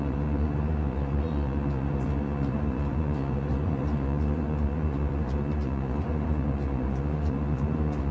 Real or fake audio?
fake